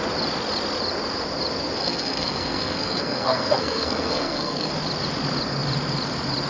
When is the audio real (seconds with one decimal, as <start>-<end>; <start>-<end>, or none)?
0.0-1.8; 4.7-6.5